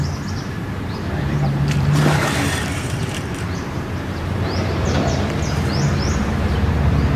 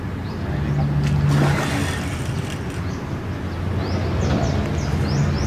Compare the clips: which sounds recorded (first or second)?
second